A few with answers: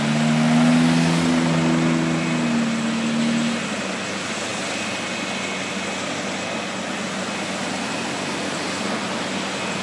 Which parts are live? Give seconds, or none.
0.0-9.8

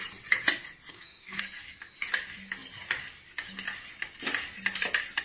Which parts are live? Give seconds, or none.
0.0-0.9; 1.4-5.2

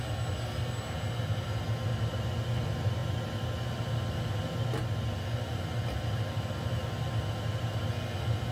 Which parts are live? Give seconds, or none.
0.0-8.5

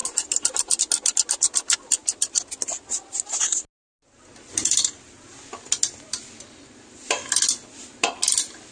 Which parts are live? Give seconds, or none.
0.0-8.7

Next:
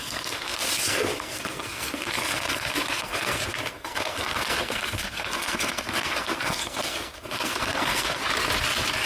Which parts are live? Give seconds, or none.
8.2-9.1

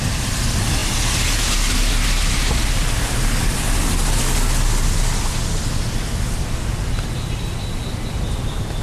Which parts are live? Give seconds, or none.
0.0-8.8

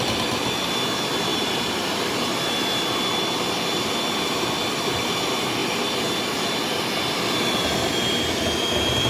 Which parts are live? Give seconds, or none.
0.0-1.3; 2.0-9.1